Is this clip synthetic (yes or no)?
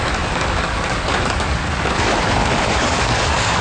yes